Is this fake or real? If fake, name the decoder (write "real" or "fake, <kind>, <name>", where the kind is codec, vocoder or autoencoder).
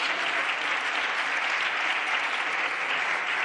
real